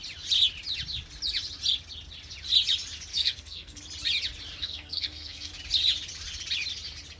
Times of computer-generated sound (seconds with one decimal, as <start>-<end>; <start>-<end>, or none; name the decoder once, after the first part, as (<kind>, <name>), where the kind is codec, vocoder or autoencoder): 3.1-3.8 (codec, SNAC); 4.6-5.5